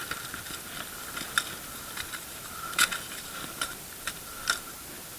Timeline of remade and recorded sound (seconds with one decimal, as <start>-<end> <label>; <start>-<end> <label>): 0.0-1.7 recorded; 1.7-3.7 remade; 3.7-5.2 recorded